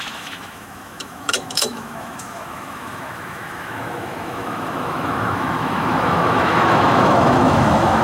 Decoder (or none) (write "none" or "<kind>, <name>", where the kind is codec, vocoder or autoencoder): autoencoder, DAC-VAE